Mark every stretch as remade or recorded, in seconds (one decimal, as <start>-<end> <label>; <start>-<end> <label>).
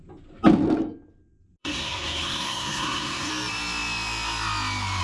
0.0-1.6 recorded; 1.6-3.3 remade; 3.3-5.0 recorded